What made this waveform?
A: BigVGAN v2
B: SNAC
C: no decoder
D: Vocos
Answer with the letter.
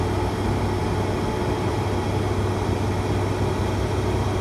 C